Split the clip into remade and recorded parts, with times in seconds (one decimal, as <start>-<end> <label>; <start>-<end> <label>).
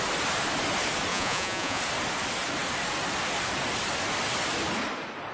0.0-1.1 recorded; 1.1-1.8 remade; 1.8-5.3 recorded